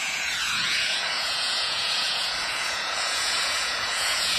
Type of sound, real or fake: fake